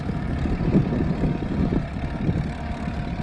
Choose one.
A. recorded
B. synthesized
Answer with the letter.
B